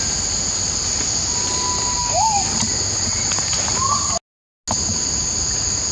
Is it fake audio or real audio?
real